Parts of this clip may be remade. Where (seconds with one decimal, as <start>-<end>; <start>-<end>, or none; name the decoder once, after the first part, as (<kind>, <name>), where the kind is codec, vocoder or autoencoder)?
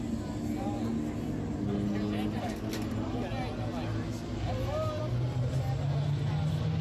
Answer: none